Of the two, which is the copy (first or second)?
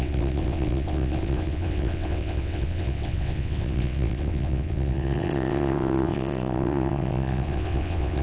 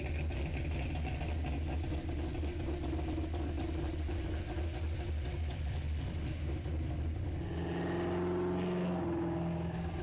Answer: first